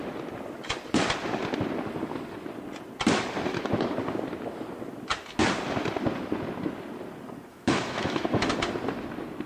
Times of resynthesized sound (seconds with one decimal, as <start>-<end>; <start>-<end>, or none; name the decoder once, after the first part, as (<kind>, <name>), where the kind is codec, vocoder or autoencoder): 7.5-8.5 (autoencoder, DAC-VAE)